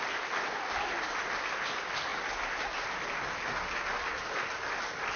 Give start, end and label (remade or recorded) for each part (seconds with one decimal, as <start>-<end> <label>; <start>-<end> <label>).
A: 0.0-5.2 recorded